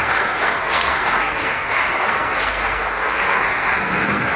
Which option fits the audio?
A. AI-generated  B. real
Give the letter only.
A